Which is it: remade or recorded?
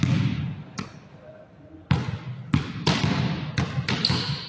recorded